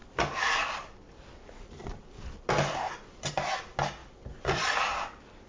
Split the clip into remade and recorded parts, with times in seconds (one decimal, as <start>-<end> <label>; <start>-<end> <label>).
0.0-3.3 remade; 3.3-4.0 recorded; 4.0-5.0 remade; 5.0-5.5 recorded